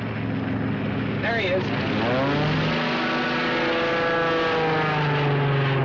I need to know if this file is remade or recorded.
recorded